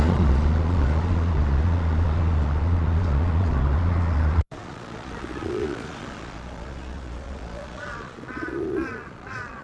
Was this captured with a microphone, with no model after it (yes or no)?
no